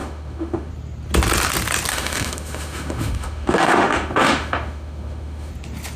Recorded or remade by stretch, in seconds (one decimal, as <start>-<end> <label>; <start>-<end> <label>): 0.0-0.7 remade; 0.7-1.9 recorded; 1.9-5.5 remade; 5.5-6.0 recorded